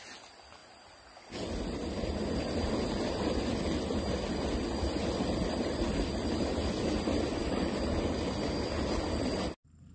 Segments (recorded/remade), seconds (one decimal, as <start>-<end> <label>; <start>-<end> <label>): 0.0-9.9 recorded